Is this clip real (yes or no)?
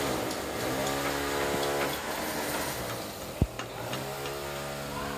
yes